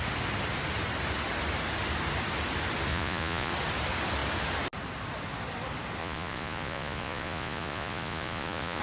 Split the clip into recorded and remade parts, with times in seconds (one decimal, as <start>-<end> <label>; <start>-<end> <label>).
0.0-2.9 recorded; 2.9-3.5 remade; 3.5-6.0 recorded; 6.0-8.8 remade